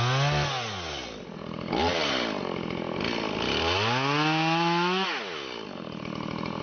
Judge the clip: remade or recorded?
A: recorded